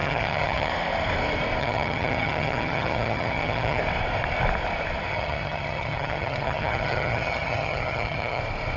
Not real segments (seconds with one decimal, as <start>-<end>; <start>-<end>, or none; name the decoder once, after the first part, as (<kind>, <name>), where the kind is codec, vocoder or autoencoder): 0.0-0.7 (vocoder, HiFi-GAN); 1.6-3.8; 5.1-8.4